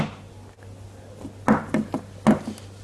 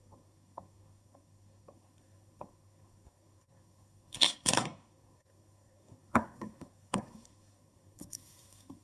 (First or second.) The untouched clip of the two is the first